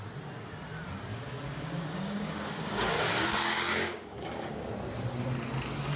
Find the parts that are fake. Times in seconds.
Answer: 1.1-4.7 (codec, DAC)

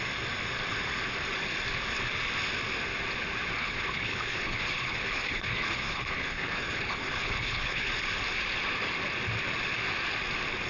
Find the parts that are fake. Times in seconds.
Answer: 3.6-7.9 (codec, HILCodec)

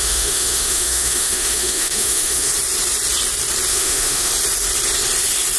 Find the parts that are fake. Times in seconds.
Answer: 0.0-2.5 (autoencoder, DAC-VAE); 3.7-4.3

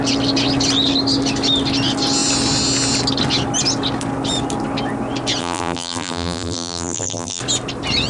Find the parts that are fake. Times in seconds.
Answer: 5.4-7.4 (vocoder, BigVGAN v2)